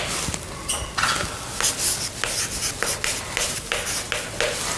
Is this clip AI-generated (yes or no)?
no